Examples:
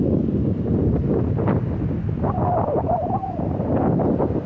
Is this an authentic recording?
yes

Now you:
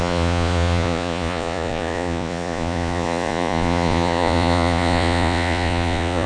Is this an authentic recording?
no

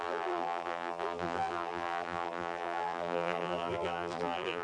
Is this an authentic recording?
no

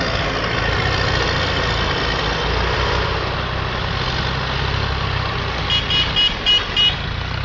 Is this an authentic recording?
yes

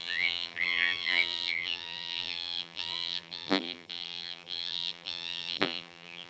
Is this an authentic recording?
no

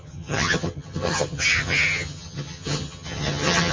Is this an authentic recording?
no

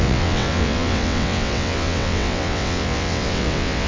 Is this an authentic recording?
no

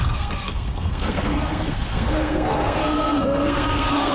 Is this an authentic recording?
no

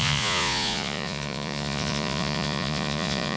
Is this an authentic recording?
no